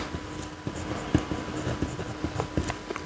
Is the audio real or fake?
real